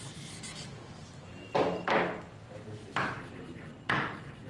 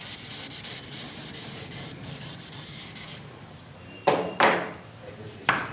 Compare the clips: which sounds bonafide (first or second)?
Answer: first